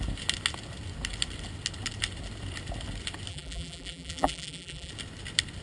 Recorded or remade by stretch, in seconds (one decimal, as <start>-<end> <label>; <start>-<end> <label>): 0.0-3.3 recorded; 3.3-4.9 remade; 4.9-5.6 recorded